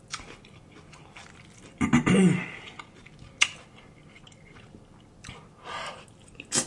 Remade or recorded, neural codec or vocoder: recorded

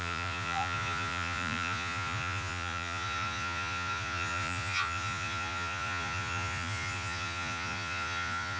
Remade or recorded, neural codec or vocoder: remade, vocoder, Vocos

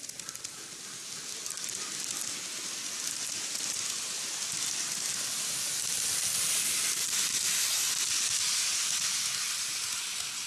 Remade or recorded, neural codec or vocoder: recorded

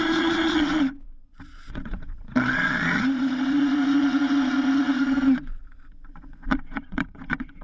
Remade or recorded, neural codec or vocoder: remade, vocoder, Vocos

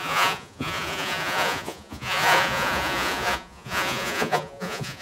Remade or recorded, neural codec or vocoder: remade, vocoder, Vocos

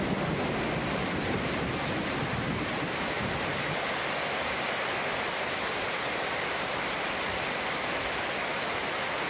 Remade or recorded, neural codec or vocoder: recorded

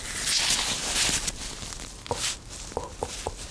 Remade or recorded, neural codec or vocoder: recorded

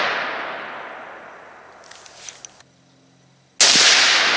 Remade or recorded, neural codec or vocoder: recorded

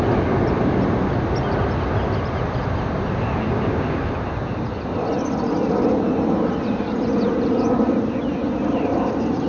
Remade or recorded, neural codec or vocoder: recorded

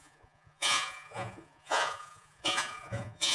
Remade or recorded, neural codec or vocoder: remade, vocoder, Vocos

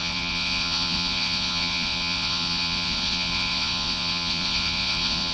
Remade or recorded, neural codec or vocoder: remade, vocoder, Vocos